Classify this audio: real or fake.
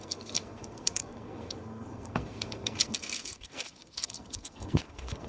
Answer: fake